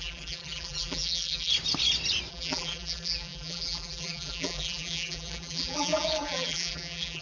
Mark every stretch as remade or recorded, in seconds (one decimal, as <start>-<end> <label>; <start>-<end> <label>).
0.0-1.5 remade; 1.5-2.3 recorded; 2.3-7.2 remade